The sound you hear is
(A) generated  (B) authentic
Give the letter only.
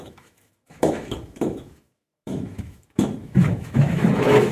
A